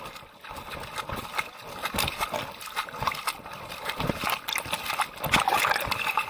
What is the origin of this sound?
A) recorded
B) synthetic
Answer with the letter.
A